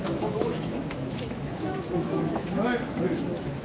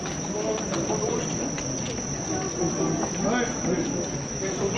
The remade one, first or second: first